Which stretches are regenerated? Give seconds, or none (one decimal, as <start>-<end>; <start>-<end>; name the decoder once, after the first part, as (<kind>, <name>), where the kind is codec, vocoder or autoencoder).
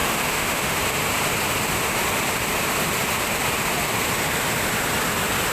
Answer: 0.0-0.8 (autoencoder, DAC-VAE)